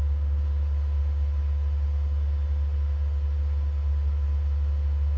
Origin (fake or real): real